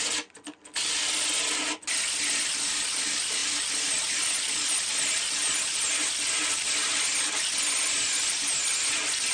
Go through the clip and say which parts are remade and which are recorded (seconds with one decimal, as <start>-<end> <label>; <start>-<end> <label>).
0.0-9.3 recorded